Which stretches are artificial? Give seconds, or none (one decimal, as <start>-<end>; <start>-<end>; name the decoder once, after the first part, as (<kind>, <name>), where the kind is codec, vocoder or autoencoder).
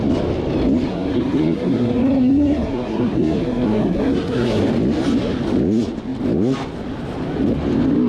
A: 0.9-4.6 (codec, SNAC)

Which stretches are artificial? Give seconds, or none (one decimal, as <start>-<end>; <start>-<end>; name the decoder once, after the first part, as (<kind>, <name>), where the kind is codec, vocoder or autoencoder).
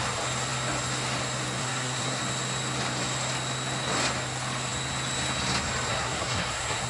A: 1.6-2.2 (codec, SNAC); 5.9-6.9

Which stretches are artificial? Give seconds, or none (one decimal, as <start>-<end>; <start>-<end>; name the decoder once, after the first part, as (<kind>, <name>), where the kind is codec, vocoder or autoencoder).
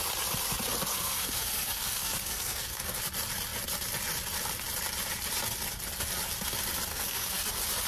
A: 0.9-3.0 (codec, SNAC); 6.9-7.5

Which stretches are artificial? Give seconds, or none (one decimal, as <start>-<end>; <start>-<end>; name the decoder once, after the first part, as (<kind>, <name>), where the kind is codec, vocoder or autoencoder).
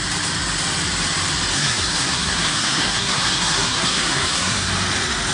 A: 1.5-4.7 (codec, SNAC)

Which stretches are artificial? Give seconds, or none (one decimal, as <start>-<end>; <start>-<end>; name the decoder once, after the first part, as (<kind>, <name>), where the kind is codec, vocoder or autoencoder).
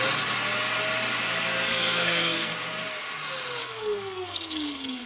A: 1.7-2.5 (codec, SNAC); 3.6-5.1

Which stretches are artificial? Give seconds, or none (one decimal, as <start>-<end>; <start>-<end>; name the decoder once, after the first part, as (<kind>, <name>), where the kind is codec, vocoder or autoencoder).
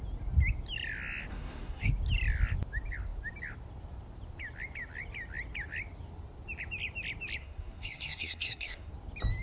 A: 1.3-1.9 (codec, SNAC); 7.4-8.9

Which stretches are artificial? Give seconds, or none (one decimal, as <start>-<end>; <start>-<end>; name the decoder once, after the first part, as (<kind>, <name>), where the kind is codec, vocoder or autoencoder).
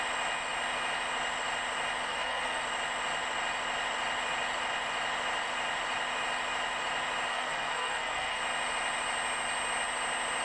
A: 2.1-2.6 (codec, SNAC); 7.3-8.4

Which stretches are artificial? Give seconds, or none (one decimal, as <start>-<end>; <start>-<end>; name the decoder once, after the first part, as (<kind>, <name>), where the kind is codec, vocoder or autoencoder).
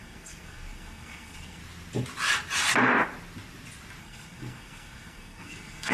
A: 0.0-1.6 (codec, SNAC); 4.0-5.9